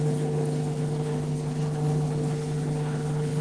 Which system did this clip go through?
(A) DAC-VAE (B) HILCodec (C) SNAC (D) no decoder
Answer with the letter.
B